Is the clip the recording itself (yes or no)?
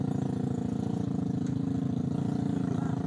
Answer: yes